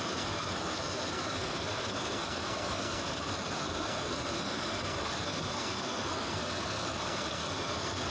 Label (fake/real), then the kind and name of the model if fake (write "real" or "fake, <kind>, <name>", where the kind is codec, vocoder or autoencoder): fake, codec, SNAC